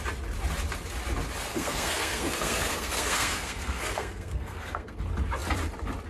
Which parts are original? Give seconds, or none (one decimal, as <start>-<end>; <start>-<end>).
0.0-1.5; 5.0-6.1